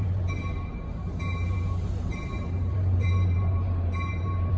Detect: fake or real fake